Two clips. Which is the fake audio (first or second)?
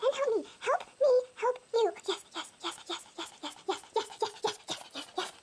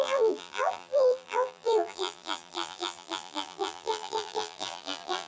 second